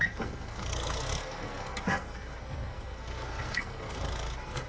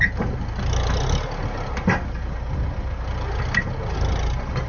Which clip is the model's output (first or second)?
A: first